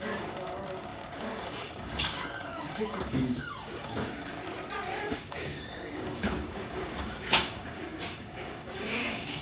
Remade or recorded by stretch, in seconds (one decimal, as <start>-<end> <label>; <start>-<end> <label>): 0.0-4.4 remade; 4.4-5.0 recorded; 5.0-9.4 remade